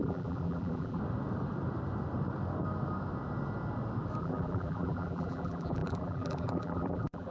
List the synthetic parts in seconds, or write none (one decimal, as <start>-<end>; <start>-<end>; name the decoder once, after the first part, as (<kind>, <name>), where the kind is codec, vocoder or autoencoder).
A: 0.0-1.0 (vocoder, BigVGAN v2); 4.2-7.3